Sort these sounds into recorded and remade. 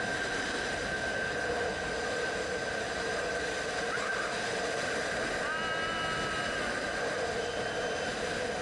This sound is recorded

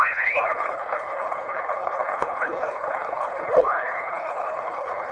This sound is remade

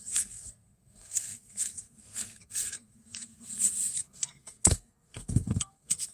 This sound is remade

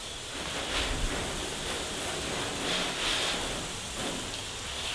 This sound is recorded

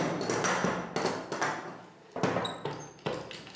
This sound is recorded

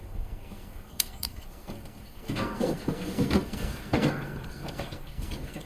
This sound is remade